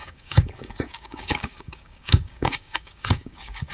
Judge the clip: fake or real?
fake